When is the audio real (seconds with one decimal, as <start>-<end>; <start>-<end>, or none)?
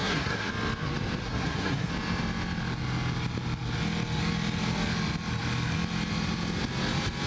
0.5-1.2; 1.9-7.3